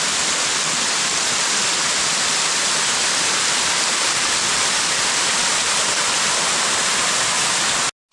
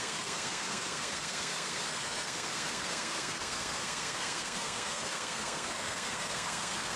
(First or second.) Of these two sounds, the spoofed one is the second